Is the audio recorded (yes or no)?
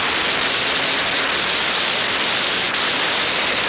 yes